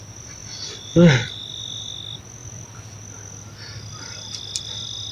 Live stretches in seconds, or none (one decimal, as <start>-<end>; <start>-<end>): 0.0-5.1